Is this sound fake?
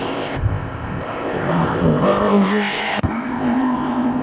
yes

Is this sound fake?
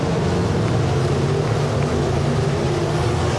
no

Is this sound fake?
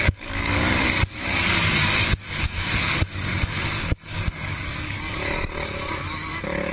yes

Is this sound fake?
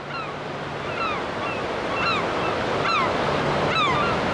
no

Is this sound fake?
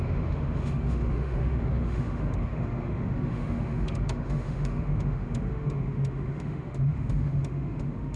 yes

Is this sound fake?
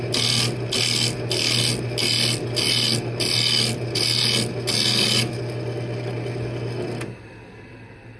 no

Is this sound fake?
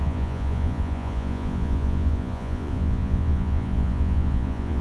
yes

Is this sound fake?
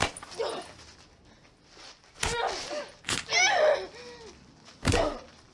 no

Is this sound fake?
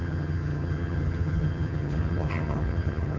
yes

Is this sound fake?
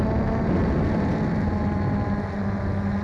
no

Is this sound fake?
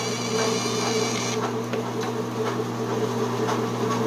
no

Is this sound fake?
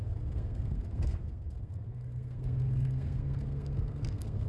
yes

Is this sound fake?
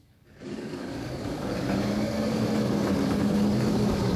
yes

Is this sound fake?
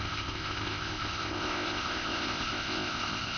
yes